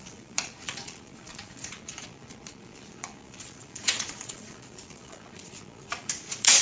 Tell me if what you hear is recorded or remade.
remade